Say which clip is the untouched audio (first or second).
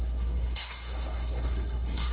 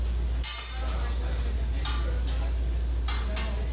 second